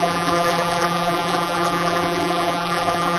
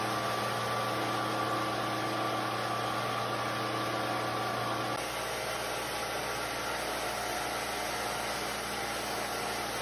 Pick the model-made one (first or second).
first